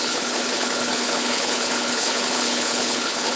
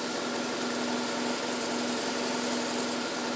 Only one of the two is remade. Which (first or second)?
first